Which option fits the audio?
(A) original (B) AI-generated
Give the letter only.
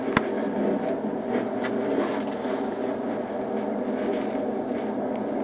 A